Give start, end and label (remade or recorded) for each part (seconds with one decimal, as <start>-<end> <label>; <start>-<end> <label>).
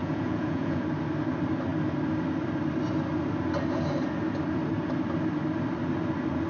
0.0-0.8 remade; 0.8-6.5 recorded